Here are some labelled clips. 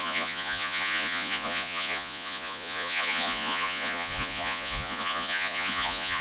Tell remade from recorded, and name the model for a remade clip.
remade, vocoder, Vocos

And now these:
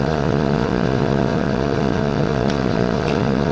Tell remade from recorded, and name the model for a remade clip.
remade, vocoder, Vocos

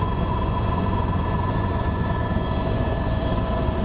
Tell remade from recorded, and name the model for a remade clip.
remade, vocoder, Vocos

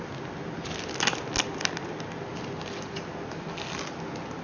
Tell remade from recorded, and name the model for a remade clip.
recorded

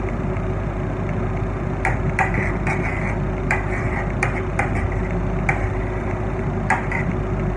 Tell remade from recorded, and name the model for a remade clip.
recorded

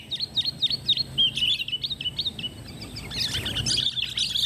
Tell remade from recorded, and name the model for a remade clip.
recorded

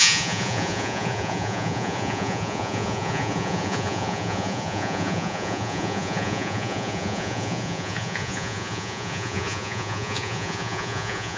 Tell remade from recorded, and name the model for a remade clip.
remade, vocoder, Vocos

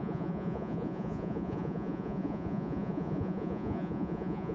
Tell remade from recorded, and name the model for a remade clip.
remade, vocoder, Vocos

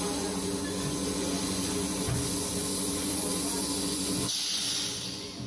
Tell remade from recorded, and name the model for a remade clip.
remade, vocoder, Vocos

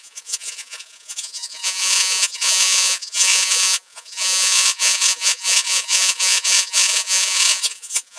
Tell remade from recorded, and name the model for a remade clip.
remade, vocoder, Vocos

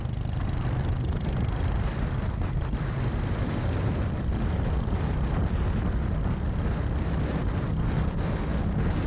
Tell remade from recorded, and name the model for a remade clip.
recorded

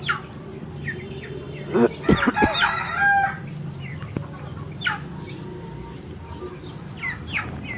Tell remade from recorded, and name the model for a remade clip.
recorded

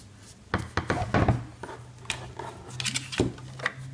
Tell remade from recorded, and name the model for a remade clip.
recorded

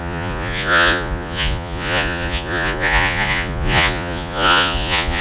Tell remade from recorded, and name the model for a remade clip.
remade, vocoder, Vocos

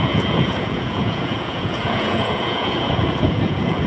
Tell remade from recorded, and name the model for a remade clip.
remade, vocoder, Vocos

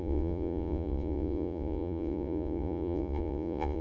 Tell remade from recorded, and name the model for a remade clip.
remade, vocoder, Vocos